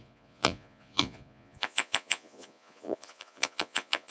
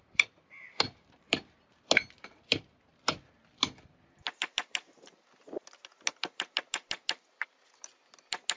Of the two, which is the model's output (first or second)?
first